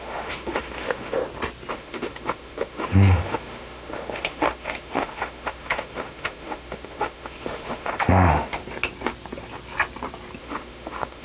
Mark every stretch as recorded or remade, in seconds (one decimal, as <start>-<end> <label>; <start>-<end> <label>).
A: 0.0-1.2 remade; 1.2-1.7 recorded; 1.7-8.6 remade; 8.6-10.4 recorded; 10.4-11.2 remade